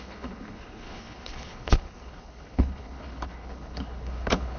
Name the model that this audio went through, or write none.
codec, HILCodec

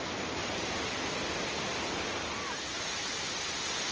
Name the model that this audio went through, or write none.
none